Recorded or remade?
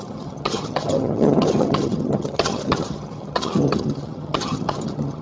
remade